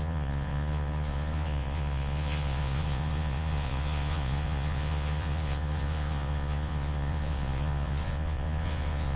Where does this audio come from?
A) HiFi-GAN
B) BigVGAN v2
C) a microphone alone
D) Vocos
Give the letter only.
D